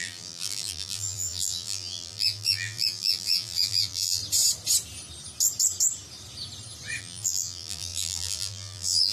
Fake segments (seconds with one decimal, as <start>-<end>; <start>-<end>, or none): 0.0-4.2; 7.0-9.1